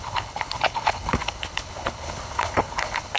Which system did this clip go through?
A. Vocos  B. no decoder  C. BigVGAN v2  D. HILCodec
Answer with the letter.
D